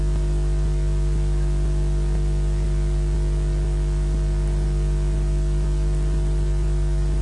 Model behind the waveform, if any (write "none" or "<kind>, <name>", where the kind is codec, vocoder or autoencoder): none